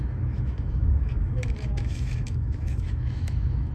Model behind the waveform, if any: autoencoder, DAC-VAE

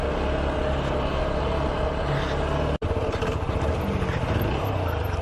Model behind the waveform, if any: none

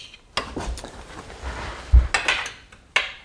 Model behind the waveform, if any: none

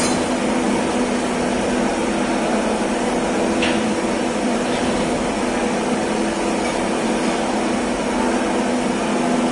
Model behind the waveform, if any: none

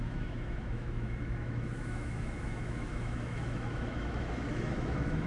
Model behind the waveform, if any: autoencoder, DAC-VAE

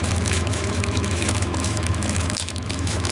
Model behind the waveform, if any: autoencoder, DAC-VAE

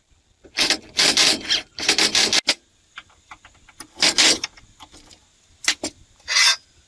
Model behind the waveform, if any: none